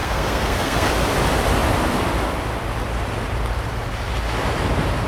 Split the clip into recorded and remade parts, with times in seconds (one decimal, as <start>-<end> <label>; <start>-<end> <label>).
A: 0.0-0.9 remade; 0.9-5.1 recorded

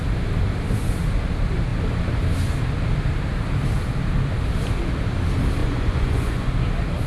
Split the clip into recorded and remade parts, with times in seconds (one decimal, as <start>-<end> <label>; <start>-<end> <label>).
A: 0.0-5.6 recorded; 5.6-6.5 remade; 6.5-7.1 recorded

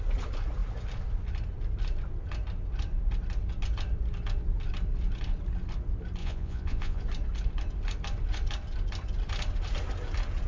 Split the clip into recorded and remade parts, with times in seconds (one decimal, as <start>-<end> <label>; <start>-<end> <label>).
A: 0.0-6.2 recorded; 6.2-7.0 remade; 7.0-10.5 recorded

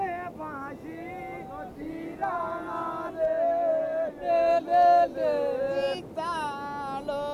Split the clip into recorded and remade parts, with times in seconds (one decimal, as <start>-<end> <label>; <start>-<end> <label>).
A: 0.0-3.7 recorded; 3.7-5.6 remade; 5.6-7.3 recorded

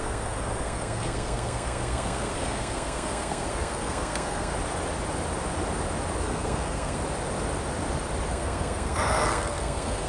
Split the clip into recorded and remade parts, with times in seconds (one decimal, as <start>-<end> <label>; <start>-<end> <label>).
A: 0.0-4.5 remade; 4.5-6.2 recorded; 6.2-7.0 remade; 7.0-8.3 recorded; 8.3-10.1 remade

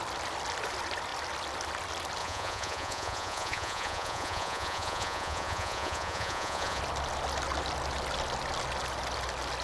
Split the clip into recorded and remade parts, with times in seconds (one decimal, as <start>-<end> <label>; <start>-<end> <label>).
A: 0.0-2.2 recorded; 2.2-6.8 remade; 6.8-9.6 recorded

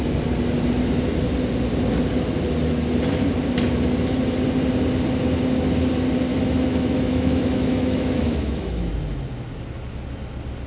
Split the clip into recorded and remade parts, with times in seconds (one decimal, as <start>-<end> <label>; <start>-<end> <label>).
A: 0.0-6.3 recorded; 6.3-8.9 remade; 8.9-10.7 recorded

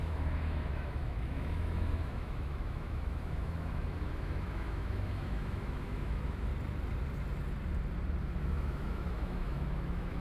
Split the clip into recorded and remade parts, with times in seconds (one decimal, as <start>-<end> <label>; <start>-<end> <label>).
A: 0.0-6.5 remade; 6.5-8.4 recorded; 8.4-10.2 remade